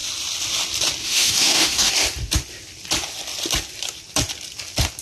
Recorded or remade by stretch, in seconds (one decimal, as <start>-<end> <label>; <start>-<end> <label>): 0.0-1.0 recorded; 1.0-1.9 remade; 1.9-5.0 recorded